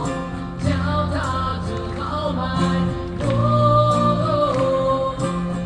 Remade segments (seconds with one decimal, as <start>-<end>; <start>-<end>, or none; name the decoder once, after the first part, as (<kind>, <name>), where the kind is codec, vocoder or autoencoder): none